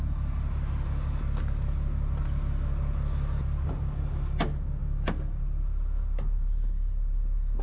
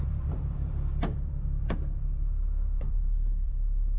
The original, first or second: first